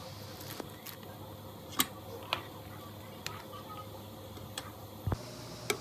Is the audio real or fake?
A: real